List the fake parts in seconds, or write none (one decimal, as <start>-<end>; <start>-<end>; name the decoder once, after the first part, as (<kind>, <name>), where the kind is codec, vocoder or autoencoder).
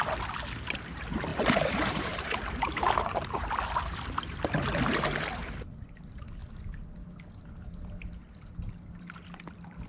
1.3-3.5 (vocoder, BigVGAN v2)